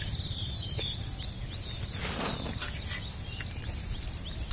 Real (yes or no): yes